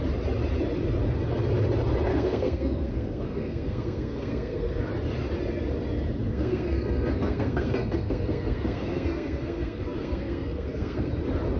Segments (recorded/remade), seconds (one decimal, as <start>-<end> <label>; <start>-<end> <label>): 0.0-2.1 recorded; 2.1-4.8 remade; 4.8-6.3 recorded; 6.3-11.1 remade; 11.1-11.6 recorded